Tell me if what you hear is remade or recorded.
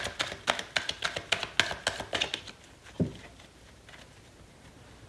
recorded